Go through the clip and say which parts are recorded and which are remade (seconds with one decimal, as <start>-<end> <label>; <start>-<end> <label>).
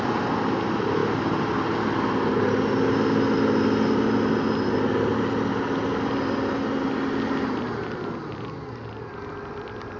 0.0-10.0 recorded